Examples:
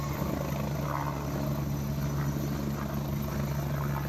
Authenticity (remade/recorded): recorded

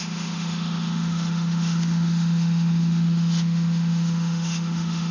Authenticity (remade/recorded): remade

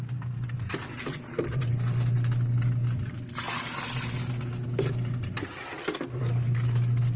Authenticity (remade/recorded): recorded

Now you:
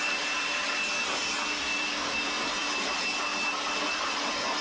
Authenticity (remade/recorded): remade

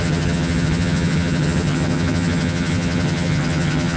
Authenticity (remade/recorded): remade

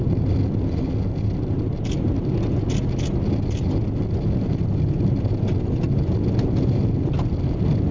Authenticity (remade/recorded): recorded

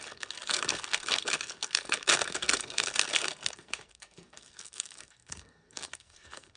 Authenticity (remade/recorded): remade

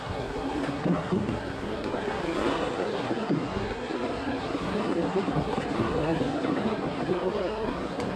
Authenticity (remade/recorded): remade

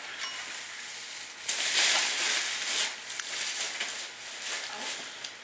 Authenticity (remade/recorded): recorded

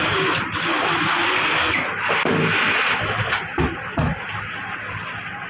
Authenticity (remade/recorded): recorded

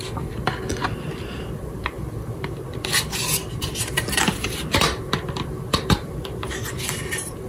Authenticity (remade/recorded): remade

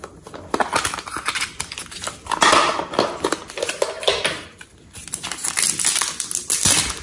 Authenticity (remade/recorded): recorded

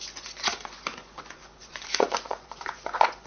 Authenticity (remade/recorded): remade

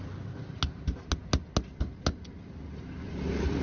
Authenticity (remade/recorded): recorded